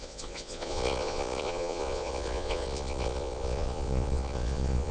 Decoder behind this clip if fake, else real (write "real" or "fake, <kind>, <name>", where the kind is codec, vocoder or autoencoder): fake, vocoder, Vocos